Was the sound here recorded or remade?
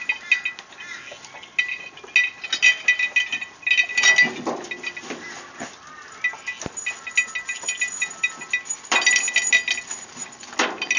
recorded